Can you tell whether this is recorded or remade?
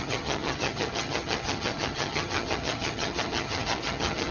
remade